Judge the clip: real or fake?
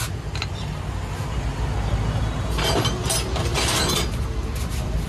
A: real